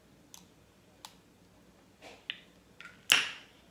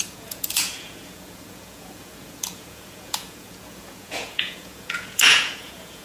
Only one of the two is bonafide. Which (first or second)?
first